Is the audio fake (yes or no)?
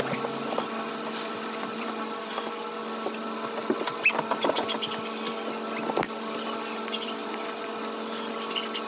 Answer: no